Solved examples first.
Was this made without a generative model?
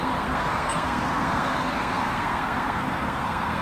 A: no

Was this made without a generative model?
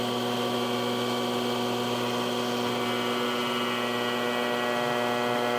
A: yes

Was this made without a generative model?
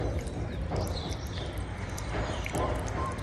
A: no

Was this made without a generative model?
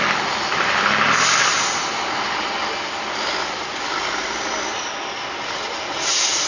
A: yes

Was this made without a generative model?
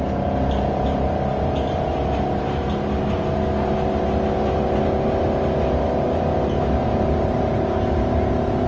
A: yes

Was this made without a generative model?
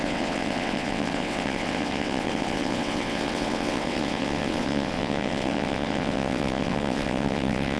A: no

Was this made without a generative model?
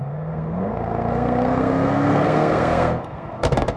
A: no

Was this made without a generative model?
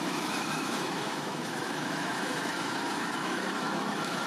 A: no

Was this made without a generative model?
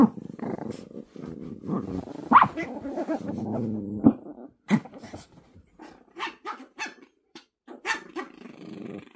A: no